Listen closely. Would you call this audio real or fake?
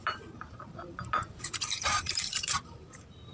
fake